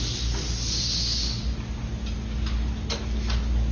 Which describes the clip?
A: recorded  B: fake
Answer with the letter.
A